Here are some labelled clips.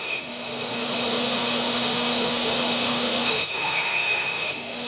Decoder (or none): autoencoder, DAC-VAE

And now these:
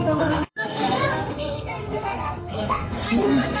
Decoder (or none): codec, SNAC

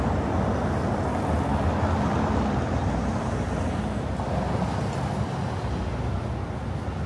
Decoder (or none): none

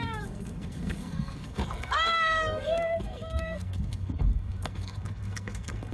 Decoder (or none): codec, SNAC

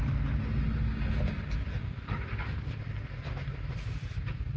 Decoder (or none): none